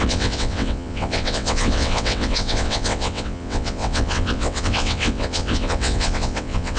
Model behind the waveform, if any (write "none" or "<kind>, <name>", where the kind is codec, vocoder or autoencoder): vocoder, WaveNeXt